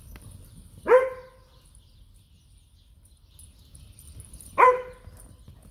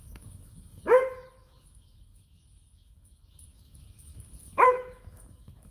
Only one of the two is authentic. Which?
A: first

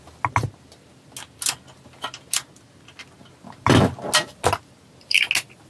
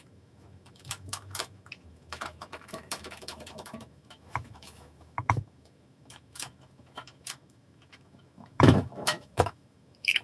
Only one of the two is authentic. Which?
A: first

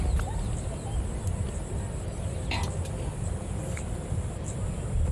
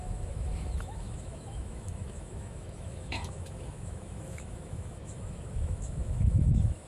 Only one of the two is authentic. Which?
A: first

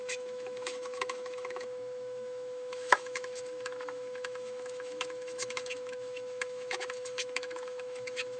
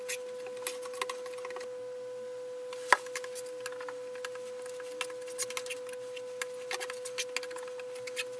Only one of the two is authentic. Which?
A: second